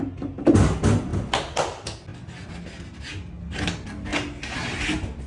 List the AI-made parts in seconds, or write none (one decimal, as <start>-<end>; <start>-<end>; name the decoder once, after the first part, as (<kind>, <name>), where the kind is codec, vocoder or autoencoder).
none